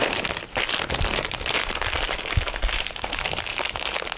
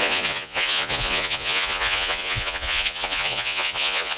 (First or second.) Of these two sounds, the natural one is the first